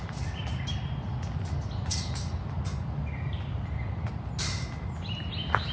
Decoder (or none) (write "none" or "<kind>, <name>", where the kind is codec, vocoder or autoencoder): none